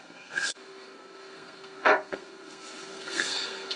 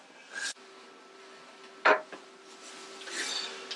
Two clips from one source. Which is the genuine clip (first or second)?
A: second